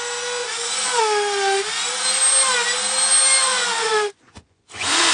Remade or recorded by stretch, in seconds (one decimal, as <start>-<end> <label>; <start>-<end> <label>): 0.0-0.4 recorded; 0.4-1.0 remade; 1.0-3.5 recorded; 3.5-5.1 remade